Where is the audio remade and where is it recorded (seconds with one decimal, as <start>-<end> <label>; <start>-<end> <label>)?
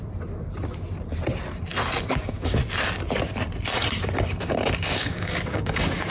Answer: 0.0-2.1 recorded; 2.1-2.6 remade; 2.6-4.5 recorded; 4.5-6.1 remade